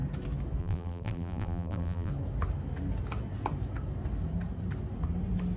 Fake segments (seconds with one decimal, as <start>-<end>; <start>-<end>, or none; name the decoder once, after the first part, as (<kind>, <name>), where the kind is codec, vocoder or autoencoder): 0.6-2.1 (vocoder, BigVGAN v2)